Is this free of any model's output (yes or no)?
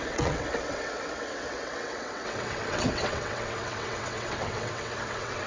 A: no